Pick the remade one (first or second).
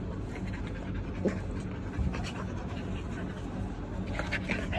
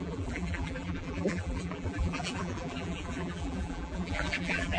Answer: second